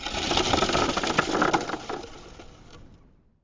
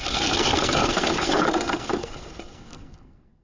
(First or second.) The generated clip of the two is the second